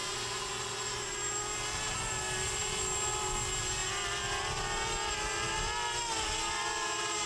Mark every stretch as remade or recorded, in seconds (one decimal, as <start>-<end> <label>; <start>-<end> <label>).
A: 0.0-7.3 recorded